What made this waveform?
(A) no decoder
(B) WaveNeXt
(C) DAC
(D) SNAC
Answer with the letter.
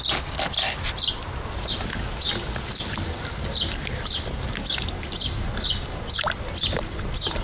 A